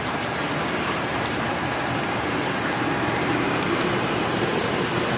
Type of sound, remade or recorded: remade